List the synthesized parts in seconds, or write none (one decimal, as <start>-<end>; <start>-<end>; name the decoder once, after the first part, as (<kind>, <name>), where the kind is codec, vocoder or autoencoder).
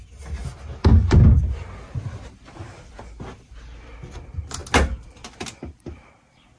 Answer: none